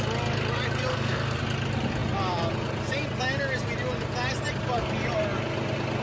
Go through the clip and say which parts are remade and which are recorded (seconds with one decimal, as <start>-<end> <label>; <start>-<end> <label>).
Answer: 0.0-0.9 recorded; 0.9-1.4 remade; 1.4-6.0 recorded